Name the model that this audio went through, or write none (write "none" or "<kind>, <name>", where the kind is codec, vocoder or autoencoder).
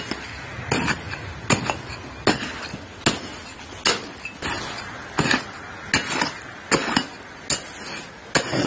none